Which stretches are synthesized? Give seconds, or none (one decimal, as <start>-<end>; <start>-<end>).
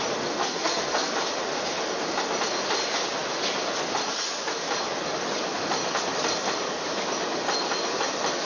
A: 0.4-1.1